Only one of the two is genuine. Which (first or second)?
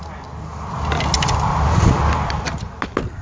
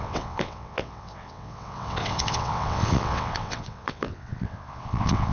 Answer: first